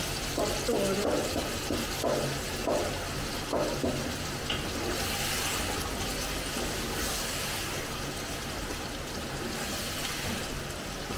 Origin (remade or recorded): recorded